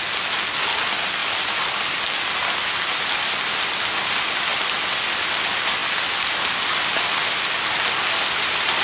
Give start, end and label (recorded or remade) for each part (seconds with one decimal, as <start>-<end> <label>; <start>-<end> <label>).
0.0-8.8 recorded